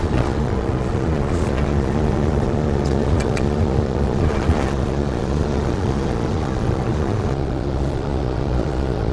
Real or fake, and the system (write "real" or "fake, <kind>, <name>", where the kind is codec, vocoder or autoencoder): fake, vocoder, Vocos